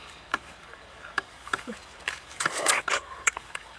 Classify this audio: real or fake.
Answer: fake